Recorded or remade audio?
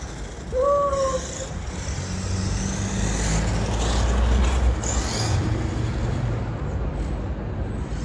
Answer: recorded